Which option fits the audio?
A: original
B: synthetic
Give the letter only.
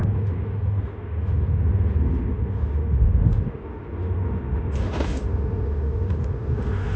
B